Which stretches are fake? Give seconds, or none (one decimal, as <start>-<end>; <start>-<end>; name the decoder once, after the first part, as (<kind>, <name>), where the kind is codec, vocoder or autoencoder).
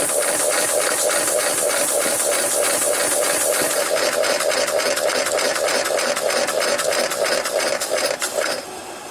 none